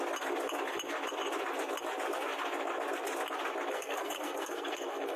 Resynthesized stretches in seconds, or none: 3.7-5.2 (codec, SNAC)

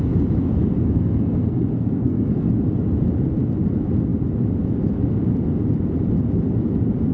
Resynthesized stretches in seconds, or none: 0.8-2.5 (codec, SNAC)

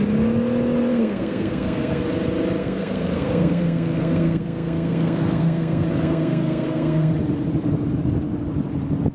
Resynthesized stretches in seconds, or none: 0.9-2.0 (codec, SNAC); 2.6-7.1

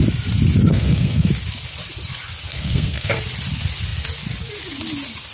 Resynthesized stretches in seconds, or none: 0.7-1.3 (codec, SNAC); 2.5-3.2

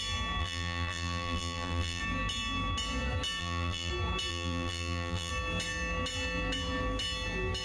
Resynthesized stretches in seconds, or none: 0.4-2.0 (vocoder, BigVGAN v2); 3.4-3.9; 4.3-5.3